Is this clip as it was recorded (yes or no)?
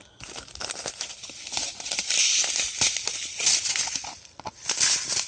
yes